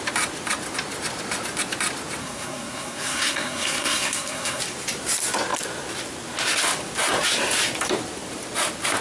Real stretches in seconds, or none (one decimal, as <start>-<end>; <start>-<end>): 0.0-2.2; 4.6-9.0

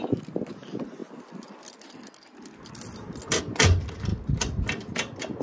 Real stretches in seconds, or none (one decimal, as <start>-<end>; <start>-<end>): 0.0-5.4